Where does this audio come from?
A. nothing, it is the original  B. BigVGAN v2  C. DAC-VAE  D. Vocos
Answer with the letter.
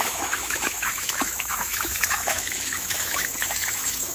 C